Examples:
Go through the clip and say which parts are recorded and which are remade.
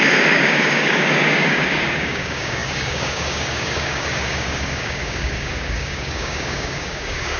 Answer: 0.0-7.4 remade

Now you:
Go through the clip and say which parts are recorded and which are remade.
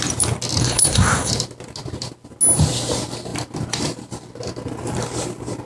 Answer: 0.0-0.6 recorded; 0.6-1.3 remade; 1.3-5.7 recorded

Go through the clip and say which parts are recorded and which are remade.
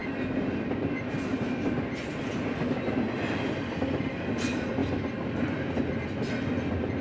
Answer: 0.0-7.0 recorded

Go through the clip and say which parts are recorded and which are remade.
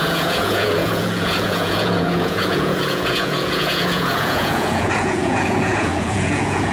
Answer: 0.0-6.7 remade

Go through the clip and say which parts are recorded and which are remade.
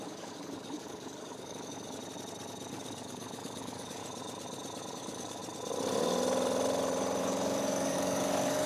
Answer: 0.0-2.0 remade; 2.0-2.7 recorded; 2.7-4.0 remade; 4.0-4.9 recorded; 4.9-5.4 remade; 5.4-7.2 recorded; 7.2-8.7 remade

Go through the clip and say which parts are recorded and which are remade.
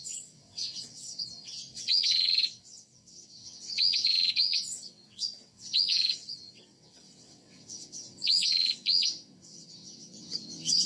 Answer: 0.0-10.9 remade